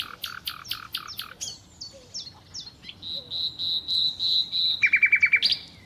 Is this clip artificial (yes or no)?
no